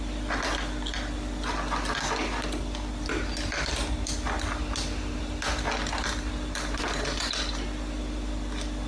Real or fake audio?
real